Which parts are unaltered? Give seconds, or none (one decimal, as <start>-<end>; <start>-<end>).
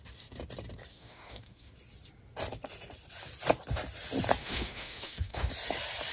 0.0-0.9; 1.7-4.4; 5.5-6.1